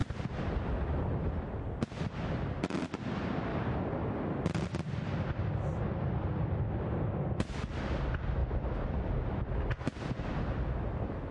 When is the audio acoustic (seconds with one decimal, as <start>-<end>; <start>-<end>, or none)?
0.0-11.3

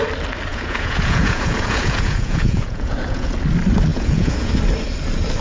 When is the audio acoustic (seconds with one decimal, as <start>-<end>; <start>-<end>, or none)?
0.0-0.5; 3.3-3.9; 4.5-5.4

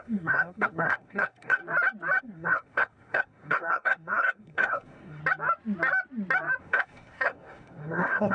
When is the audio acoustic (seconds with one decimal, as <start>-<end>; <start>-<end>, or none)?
1.6-2.2; 5.2-6.6

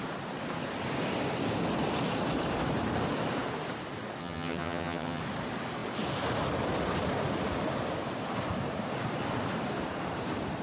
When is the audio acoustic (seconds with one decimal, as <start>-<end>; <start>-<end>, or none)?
0.0-4.2; 5.2-10.6

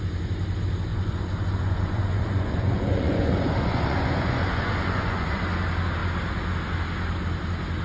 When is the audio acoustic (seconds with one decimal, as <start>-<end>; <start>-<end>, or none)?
0.0-0.9; 5.4-7.8

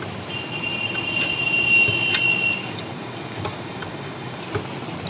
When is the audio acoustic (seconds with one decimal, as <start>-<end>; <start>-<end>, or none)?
0.0-2.6; 4.4-5.1

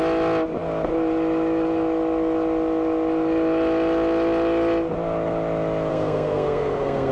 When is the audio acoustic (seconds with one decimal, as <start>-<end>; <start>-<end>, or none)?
0.0-5.9

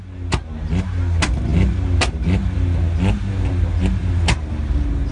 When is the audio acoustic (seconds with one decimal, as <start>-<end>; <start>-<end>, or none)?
0.0-5.1